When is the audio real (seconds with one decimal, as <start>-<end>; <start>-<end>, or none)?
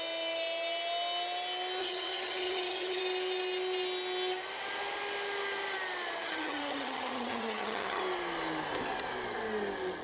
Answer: 0.0-1.8; 3.0-6.2; 8.0-10.0